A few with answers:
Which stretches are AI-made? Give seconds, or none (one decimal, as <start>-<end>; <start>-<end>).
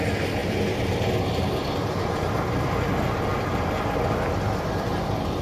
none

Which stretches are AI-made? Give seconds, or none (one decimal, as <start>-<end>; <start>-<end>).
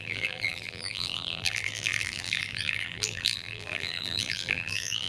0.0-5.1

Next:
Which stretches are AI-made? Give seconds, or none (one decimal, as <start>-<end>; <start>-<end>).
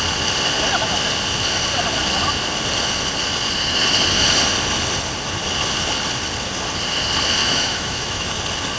7.4-8.3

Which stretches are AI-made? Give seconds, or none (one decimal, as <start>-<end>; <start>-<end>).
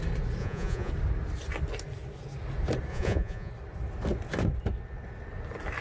0.4-0.9; 2.9-3.5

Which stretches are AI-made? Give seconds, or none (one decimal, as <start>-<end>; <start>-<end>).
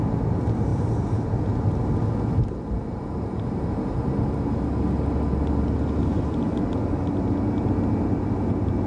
none